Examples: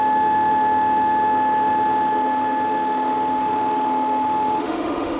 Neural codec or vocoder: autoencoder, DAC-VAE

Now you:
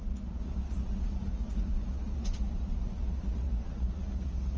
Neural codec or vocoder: vocoder, Vocos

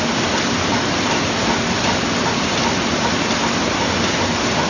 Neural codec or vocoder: none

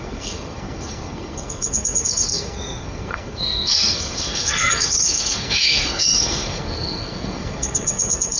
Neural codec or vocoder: codec, SNAC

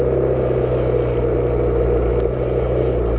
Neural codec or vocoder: none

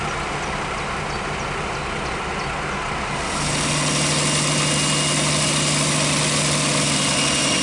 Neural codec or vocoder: none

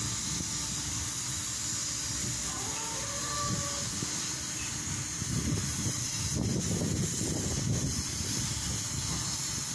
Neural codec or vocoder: none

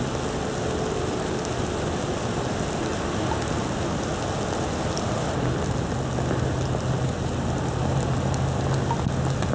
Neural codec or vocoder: none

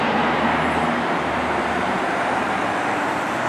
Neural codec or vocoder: vocoder, BigVGAN v2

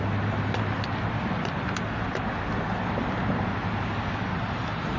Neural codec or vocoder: none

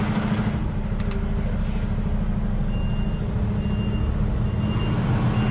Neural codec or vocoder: none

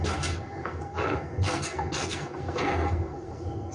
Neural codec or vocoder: codec, SNAC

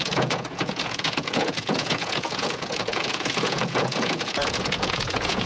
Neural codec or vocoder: vocoder, Vocos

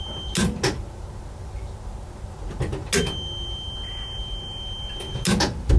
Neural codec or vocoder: none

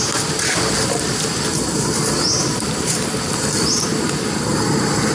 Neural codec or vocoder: none